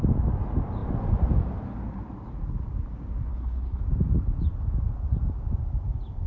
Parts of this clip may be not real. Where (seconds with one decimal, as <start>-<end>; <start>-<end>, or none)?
3.3-3.8